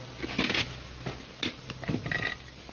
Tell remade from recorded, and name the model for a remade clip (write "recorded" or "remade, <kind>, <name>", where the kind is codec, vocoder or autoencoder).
recorded